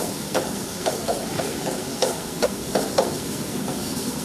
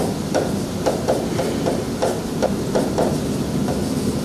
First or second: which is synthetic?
first